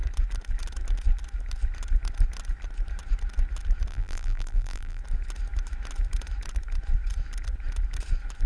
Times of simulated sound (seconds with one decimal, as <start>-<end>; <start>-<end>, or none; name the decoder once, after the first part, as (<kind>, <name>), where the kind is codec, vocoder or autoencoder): 3.9-5.0 (vocoder, BigVGAN v2)